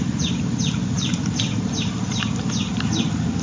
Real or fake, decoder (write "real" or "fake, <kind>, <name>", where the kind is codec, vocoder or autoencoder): real